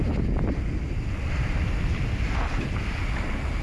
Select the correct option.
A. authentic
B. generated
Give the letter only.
A